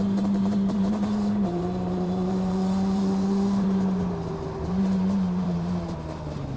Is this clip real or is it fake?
fake